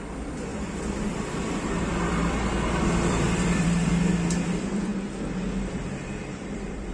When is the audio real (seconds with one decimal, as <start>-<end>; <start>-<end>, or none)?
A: 3.9-4.4; 4.9-5.5